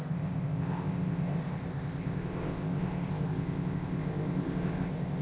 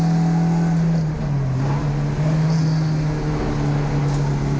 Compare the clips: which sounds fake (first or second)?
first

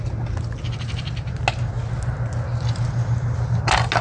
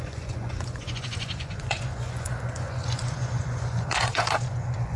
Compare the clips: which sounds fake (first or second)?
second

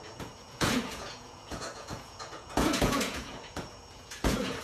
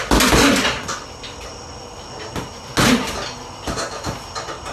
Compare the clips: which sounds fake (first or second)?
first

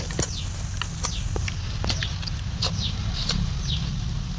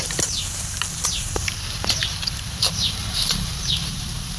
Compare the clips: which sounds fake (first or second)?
second